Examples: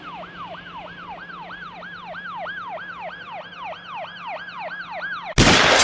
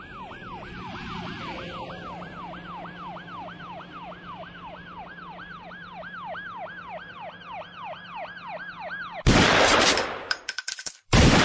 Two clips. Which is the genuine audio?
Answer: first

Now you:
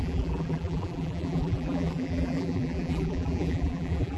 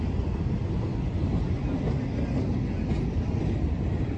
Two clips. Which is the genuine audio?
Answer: second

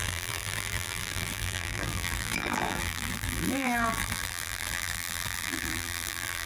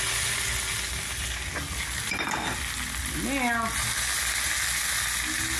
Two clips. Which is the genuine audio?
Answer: second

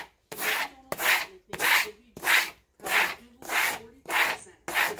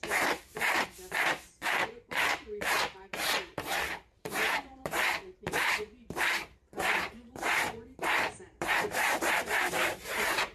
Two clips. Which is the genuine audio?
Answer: first